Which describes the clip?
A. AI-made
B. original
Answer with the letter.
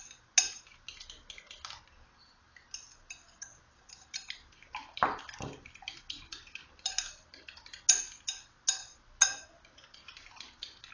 B